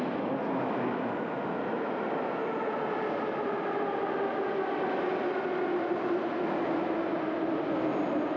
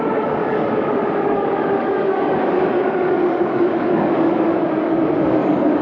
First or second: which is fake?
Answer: second